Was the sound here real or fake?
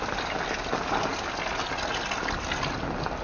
real